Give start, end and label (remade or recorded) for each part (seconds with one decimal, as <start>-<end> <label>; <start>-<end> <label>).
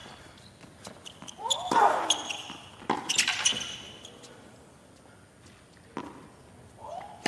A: 0.0-7.3 recorded